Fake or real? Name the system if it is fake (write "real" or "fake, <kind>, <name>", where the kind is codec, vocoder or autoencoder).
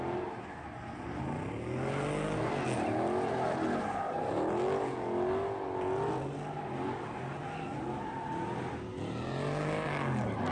real